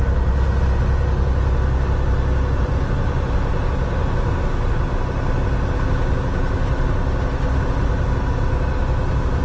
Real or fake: real